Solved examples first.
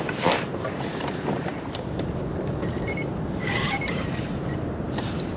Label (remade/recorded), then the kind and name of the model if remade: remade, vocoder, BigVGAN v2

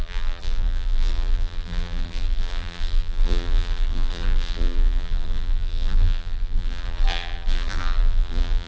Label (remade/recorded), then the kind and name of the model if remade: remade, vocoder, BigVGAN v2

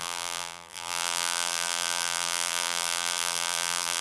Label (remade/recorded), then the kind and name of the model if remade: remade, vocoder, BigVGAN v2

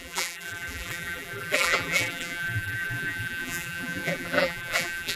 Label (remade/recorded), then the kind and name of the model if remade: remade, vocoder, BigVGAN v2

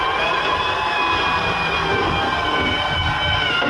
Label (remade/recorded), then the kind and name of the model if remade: recorded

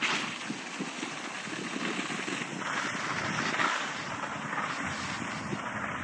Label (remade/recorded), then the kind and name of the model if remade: recorded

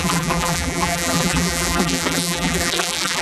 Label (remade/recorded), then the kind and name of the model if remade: remade, vocoder, BigVGAN v2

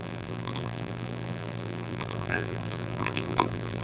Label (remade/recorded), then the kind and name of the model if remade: remade, vocoder, BigVGAN v2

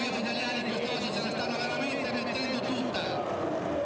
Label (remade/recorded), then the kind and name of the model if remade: recorded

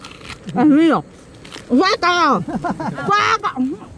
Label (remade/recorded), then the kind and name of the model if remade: recorded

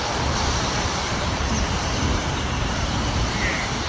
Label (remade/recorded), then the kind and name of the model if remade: remade, vocoder, BigVGAN v2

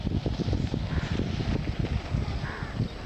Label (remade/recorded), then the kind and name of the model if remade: recorded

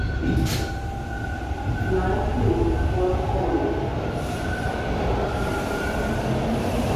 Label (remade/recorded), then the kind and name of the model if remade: recorded